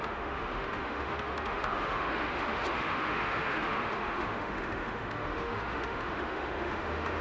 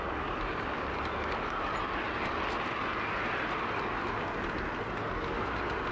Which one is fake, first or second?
first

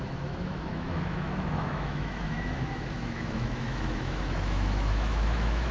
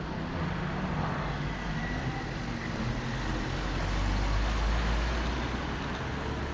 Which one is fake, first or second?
first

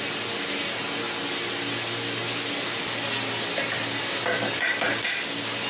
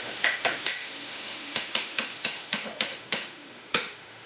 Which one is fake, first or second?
second